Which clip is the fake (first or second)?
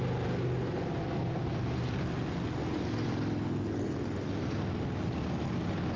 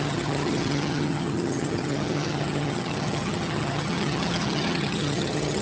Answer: second